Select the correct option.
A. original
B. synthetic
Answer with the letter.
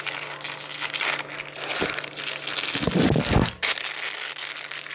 A